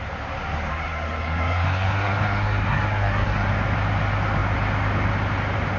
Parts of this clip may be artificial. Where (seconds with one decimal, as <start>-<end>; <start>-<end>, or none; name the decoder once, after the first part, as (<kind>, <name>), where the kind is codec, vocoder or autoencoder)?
0.7-3.5 (codec, SNAC)